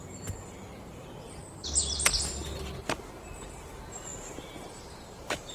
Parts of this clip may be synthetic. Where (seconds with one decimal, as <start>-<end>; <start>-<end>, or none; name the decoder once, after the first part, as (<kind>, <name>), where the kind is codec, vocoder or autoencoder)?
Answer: 0.0-1.4 (vocoder, BigVGAN v2); 2.4-5.5